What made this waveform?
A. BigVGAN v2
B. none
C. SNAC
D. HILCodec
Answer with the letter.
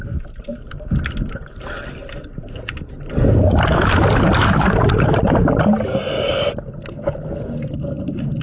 B